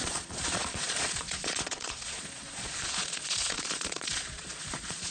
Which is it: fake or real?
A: fake